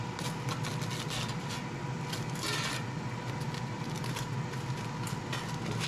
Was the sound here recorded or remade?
recorded